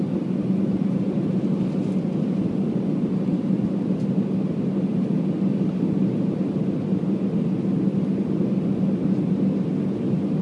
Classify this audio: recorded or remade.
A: recorded